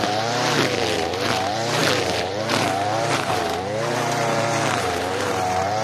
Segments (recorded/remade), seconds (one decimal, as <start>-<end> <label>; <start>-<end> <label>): 0.0-5.8 remade